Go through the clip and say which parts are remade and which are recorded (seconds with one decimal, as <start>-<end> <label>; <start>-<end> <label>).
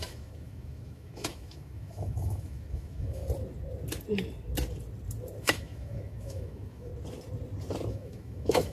0.0-3.2 remade; 3.2-5.4 recorded; 5.4-6.9 remade; 6.9-7.9 recorded; 7.9-8.7 remade